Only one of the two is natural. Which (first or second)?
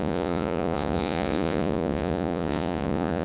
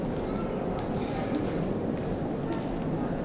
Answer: second